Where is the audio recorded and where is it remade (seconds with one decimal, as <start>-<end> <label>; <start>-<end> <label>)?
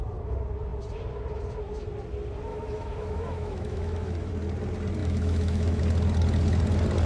0.0-2.5 recorded; 2.5-4.3 remade; 4.3-5.0 recorded; 5.0-5.8 remade; 5.8-7.1 recorded